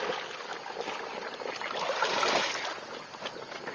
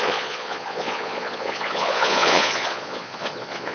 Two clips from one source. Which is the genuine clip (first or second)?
first